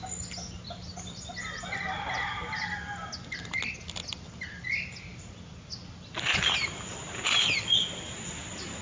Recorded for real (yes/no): yes